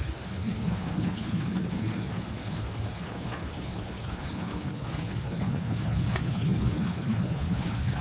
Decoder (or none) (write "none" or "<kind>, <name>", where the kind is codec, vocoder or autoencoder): codec, HILCodec